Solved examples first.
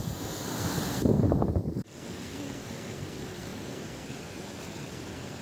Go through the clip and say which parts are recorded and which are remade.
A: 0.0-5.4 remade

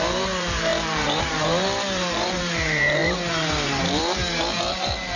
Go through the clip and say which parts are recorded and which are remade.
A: 0.0-4.2 remade; 4.2-4.7 recorded; 4.7-5.2 remade

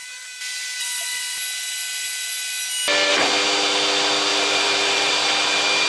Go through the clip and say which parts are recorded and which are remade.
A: 0.0-4.3 recorded; 4.3-5.1 remade; 5.1-5.9 recorded

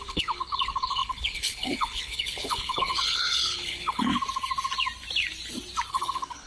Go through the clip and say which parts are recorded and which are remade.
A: 0.0-4.1 remade; 4.1-5.9 recorded; 5.9-6.5 remade

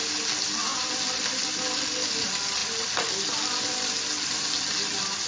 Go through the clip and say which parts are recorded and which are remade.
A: 0.0-5.3 recorded